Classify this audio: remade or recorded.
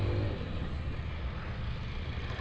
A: recorded